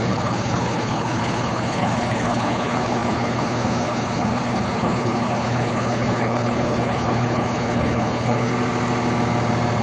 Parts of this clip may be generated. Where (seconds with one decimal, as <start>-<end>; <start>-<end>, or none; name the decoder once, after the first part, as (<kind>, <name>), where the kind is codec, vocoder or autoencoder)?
0.0-8.5 (codec, HILCodec)